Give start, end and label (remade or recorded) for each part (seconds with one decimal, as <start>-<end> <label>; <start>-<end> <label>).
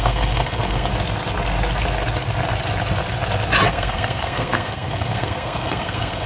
0.0-0.9 remade; 0.9-3.7 recorded; 3.7-6.3 remade